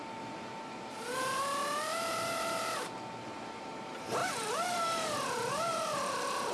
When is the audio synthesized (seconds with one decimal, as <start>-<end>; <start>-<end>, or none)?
4.2-6.5